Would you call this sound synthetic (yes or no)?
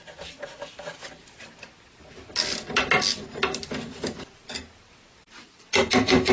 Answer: no